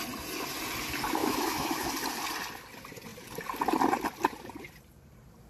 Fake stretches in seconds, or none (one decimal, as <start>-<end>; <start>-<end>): 1.2-1.9